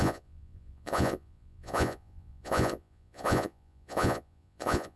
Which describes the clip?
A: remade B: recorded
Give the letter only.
A